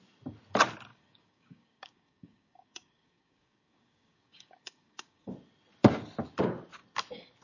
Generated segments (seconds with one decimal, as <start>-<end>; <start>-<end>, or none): 0.9-5.3